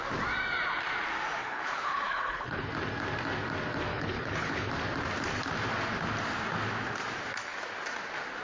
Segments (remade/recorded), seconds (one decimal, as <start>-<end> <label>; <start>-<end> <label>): 0.0-1.4 recorded; 1.4-2.7 remade; 2.7-3.9 recorded; 3.9-4.7 remade; 4.7-8.4 recorded

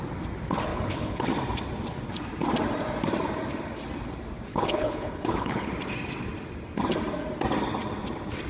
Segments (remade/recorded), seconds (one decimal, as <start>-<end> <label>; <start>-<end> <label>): 0.0-0.7 recorded; 0.7-1.3 remade; 1.3-4.5 recorded; 4.5-5.7 remade; 5.7-8.5 recorded

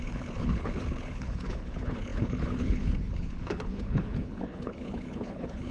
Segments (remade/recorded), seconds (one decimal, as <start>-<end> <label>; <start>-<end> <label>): 0.0-5.7 remade

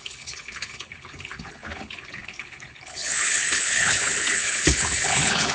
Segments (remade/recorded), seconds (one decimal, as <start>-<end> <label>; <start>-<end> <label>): 0.0-5.5 remade